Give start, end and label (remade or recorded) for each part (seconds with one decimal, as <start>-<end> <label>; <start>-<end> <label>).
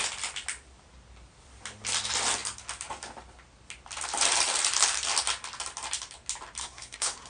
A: 0.0-6.6 recorded; 6.6-7.3 remade